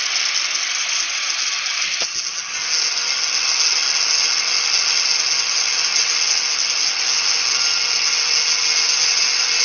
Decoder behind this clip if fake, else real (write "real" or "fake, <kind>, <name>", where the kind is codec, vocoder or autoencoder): real